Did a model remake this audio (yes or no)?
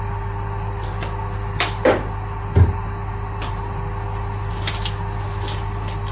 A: no